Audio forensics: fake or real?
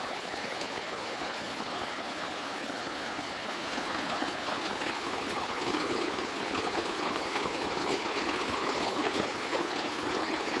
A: fake